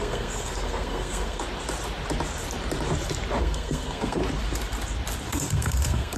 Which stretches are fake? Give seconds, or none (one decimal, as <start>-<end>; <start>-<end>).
0.0-1.4; 3.4-4.2; 5.3-6.2